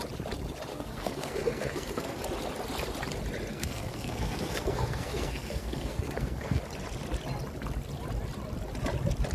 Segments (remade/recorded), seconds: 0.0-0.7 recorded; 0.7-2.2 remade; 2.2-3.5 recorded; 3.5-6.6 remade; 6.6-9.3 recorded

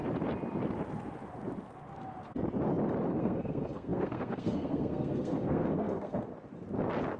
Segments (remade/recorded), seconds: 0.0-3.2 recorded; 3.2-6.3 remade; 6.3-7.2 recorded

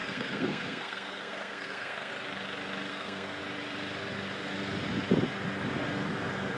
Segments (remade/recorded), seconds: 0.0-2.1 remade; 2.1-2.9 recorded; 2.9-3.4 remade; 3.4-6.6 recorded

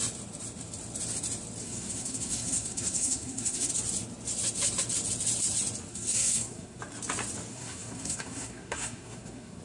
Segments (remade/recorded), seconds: 0.0-1.6 recorded; 1.6-3.7 remade; 3.7-5.9 recorded; 5.9-6.8 remade; 6.8-7.5 recorded; 7.5-9.6 remade

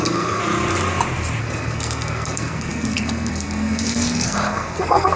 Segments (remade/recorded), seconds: 0.0-0.4 remade; 0.4-1.4 recorded; 1.4-5.2 remade

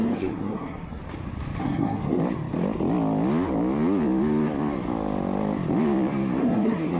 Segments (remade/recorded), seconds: 0.0-1.0 remade; 1.0-1.6 recorded; 1.6-2.2 remade; 2.2-6.4 recorded; 6.4-7.0 remade